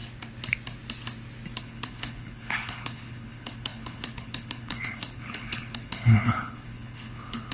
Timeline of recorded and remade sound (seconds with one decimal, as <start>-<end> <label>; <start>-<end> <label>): 0.0-1.6 recorded; 1.6-7.5 remade